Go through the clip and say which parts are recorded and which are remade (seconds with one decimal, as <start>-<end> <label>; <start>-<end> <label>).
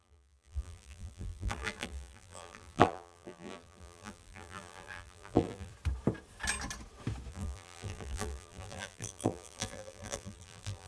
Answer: 0.0-5.7 remade; 5.7-7.3 recorded; 7.3-10.9 remade